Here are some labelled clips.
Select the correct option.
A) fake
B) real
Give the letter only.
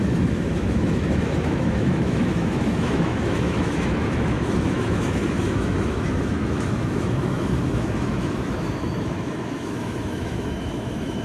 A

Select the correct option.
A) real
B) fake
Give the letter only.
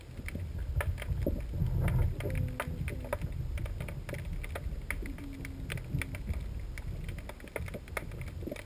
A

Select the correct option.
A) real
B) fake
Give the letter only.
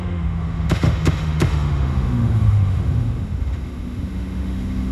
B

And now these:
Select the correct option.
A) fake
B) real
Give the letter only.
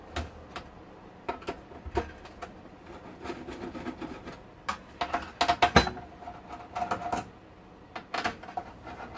B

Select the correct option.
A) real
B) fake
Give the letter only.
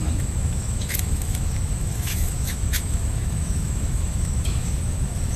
B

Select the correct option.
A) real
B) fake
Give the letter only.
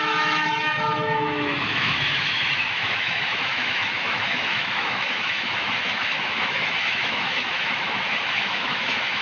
B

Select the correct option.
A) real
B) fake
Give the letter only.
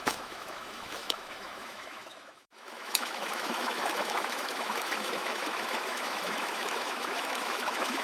B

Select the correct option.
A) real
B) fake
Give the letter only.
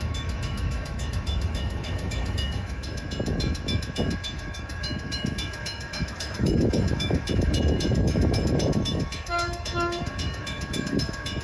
B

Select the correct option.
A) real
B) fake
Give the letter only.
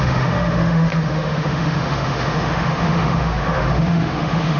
B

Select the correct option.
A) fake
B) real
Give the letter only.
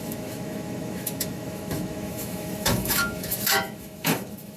A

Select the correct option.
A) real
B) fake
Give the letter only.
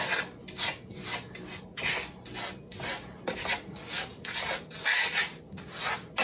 A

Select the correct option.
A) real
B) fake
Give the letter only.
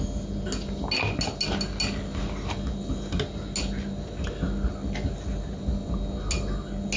A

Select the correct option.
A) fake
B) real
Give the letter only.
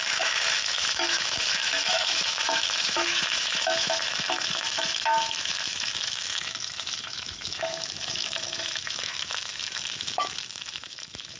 A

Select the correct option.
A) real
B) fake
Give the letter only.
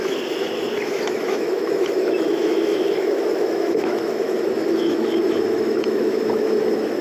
B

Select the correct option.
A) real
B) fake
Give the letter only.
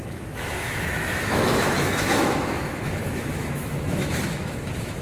B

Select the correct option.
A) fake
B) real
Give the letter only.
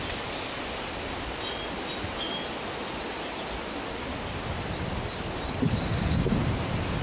B